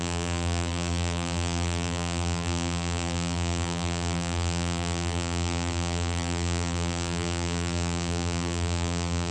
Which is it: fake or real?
fake